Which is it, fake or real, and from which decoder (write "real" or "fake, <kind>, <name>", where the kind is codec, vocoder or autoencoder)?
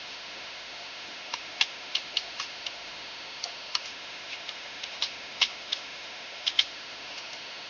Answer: fake, autoencoder, DAC-VAE